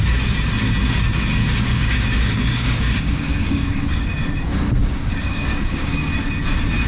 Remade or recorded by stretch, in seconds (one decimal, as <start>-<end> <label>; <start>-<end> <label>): 0.0-1.7 recorded; 1.7-4.0 remade; 4.0-4.8 recorded; 4.8-6.1 remade; 6.1-6.9 recorded